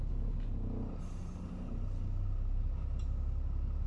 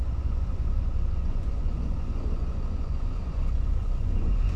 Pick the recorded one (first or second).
first